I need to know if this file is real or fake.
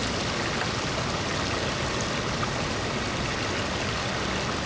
real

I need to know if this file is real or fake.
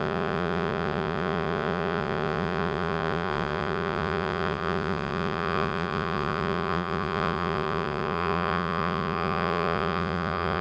fake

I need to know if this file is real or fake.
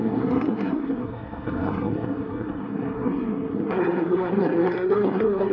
fake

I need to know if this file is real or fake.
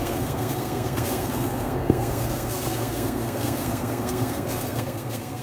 fake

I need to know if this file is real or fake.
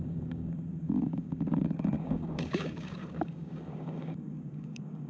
fake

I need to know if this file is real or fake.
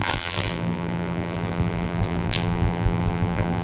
fake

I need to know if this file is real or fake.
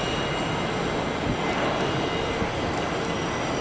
real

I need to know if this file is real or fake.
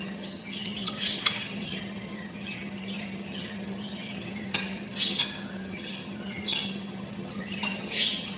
fake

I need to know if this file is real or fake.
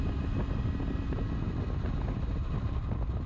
real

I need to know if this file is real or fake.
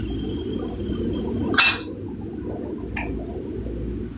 real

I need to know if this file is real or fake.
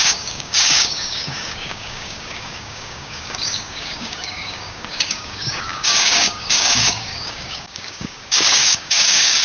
fake